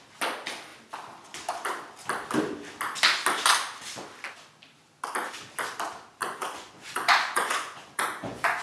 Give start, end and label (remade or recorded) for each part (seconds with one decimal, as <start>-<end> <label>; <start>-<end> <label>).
0.0-6.2 recorded; 6.2-8.6 remade